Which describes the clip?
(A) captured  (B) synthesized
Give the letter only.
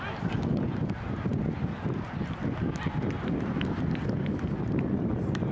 A